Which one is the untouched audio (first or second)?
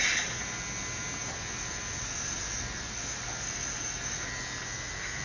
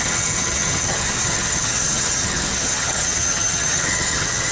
first